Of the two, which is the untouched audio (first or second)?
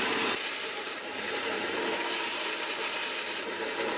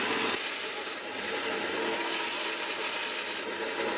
second